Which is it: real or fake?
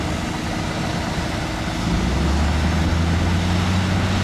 real